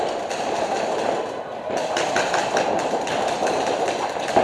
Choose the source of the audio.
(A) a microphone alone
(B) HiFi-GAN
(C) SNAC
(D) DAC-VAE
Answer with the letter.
A